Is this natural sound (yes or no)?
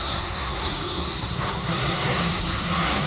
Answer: no